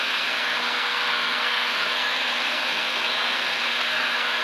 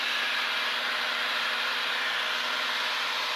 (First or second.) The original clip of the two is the second